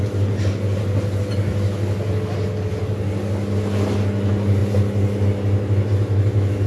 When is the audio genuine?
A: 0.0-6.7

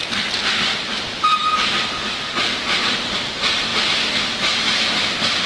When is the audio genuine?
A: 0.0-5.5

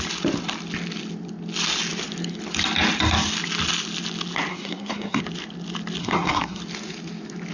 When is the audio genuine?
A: 0.0-4.5; 5.2-6.0; 6.6-7.5

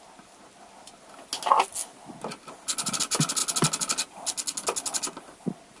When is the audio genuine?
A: 0.0-5.8

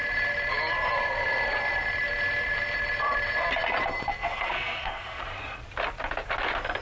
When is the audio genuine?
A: 0.0-4.1; 5.2-6.8

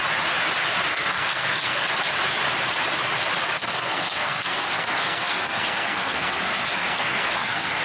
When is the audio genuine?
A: 0.0-0.9; 1.9-3.6

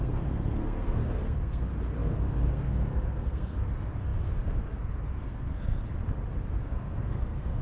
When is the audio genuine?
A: 5.9-6.6